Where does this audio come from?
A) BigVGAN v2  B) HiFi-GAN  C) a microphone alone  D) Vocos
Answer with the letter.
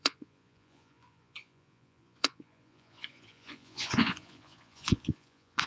D